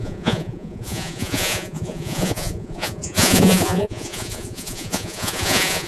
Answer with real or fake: fake